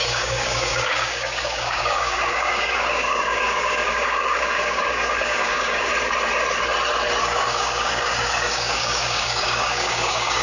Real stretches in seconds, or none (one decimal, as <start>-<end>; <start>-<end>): 5.9-7.2